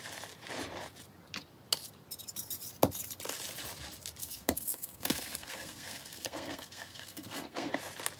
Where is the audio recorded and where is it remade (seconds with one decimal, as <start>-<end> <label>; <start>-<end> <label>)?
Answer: 0.0-4.2 recorded; 4.2-7.7 remade; 7.7-8.2 recorded